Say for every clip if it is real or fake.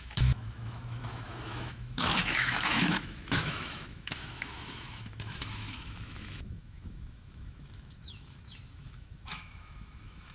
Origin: fake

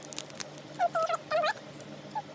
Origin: real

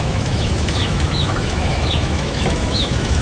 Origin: fake